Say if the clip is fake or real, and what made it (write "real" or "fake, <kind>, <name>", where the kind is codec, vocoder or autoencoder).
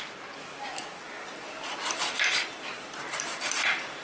fake, vocoder, BigVGAN v2